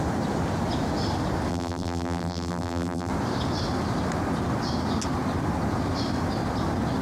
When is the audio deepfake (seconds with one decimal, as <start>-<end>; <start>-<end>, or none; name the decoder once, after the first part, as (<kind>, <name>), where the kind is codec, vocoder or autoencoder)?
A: 1.5-3.1 (vocoder, BigVGAN v2)